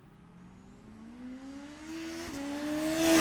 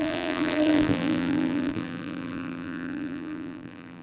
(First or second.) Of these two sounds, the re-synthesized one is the second